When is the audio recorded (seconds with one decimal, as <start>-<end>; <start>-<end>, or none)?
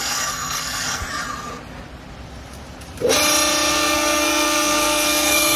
1.0-3.7